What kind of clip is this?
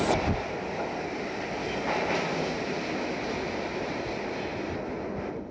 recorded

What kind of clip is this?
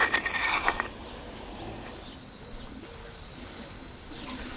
recorded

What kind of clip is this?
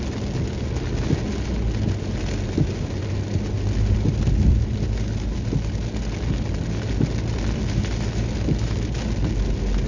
recorded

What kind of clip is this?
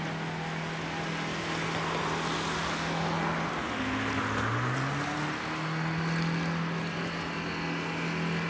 recorded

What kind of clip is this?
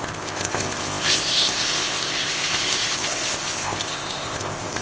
remade